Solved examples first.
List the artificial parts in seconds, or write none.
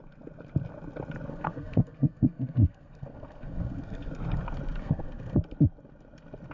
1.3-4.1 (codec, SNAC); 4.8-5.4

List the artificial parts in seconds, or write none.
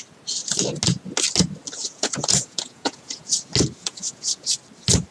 1.8-3.3 (vocoder, Vocos); 3.8-4.5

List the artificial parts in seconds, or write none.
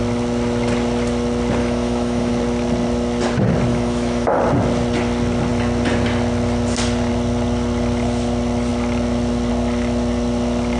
1.6-2.3 (autoencoder, DAC-VAE); 3.7-4.4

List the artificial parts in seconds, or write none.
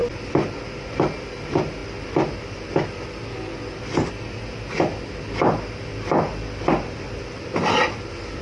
1.8-4.1 (vocoder, BigVGAN v2); 5.9-8.4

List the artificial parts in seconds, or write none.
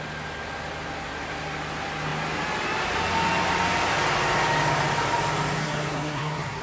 5.6-6.6 (codec, SNAC)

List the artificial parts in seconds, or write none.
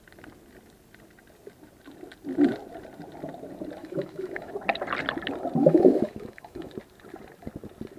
3.8-4.5 (autoencoder, DAC-VAE); 5.6-6.7